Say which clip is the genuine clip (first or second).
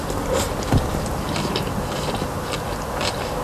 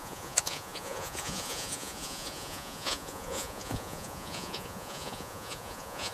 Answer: first